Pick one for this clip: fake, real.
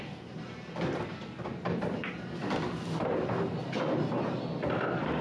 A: real